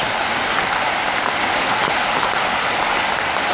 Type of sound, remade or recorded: recorded